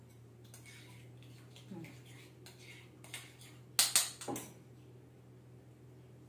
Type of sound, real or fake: real